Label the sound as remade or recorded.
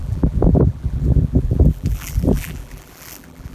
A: remade